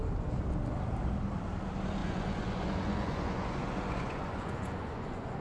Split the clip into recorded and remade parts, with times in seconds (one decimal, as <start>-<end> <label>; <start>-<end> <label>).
0.0-2.0 recorded; 2.0-5.4 remade